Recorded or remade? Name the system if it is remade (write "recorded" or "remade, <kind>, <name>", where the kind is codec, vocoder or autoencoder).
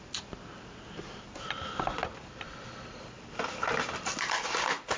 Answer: recorded